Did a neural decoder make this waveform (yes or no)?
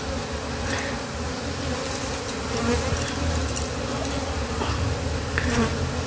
no